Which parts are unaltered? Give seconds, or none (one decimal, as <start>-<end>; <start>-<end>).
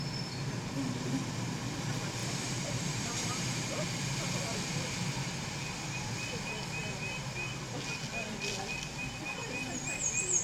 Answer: 0.0-2.2; 3.7-10.4